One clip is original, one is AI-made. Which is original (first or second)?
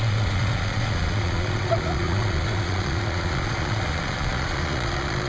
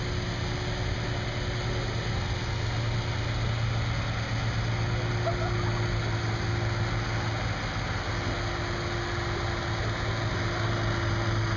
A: second